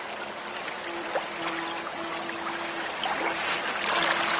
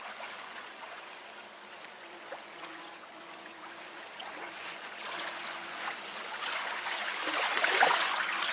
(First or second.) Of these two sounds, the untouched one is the first